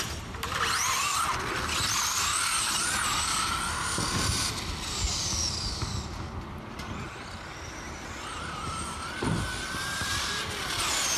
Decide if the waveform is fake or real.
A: real